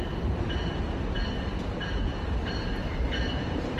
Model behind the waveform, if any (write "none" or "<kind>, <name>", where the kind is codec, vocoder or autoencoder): vocoder, BigVGAN v2